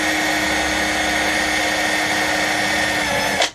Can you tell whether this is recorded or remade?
recorded